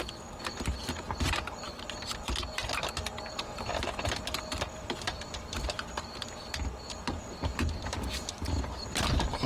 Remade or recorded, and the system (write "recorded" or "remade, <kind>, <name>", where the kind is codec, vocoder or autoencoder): recorded